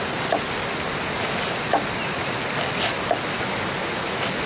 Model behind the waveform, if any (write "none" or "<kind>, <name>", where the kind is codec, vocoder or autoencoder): none